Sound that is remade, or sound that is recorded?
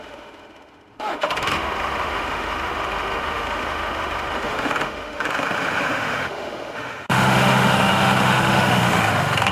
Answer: remade